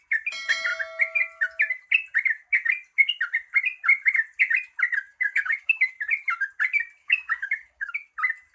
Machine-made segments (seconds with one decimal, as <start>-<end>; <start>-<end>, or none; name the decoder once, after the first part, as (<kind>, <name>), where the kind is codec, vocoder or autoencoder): 5.1-5.9 (codec, DAC); 7.0-7.9